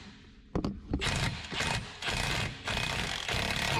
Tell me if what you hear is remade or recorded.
recorded